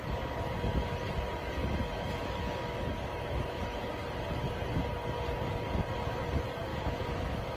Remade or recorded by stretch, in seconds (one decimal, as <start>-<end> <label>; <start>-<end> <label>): 0.0-1.6 recorded; 1.6-3.8 remade; 3.8-6.7 recorded; 6.7-7.6 remade